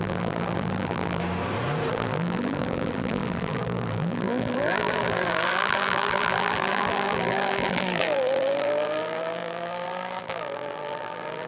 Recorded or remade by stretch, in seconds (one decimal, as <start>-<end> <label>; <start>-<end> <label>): 0.0-1.2 remade; 1.2-1.9 recorded; 1.9-11.5 remade